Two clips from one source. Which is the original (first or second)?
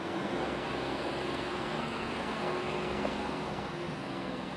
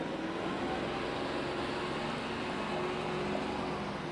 second